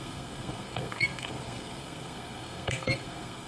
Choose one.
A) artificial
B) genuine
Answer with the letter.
A